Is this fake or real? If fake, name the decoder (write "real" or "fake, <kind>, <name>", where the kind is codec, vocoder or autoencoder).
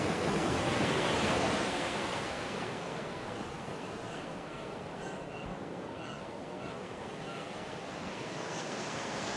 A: fake, codec, SNAC